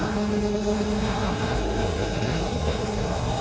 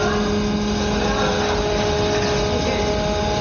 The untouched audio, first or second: second